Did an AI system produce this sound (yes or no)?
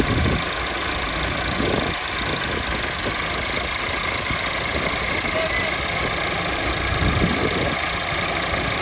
no